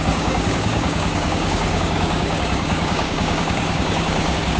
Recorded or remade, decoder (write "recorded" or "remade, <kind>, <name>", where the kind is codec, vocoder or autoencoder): remade, codec, DAC